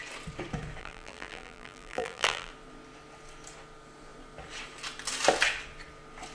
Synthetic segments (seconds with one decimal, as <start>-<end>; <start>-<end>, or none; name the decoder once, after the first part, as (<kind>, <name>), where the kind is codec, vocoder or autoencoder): 0.8-2.5 (vocoder, BigVGAN v2)